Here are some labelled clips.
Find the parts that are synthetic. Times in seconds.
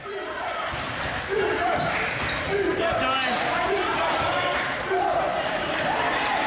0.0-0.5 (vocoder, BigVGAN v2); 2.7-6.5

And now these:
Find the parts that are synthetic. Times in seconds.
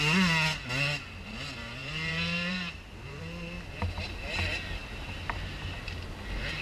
1.8-3.2 (vocoder, BigVGAN v2); 4.8-5.8